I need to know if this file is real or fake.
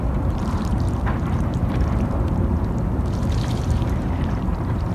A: fake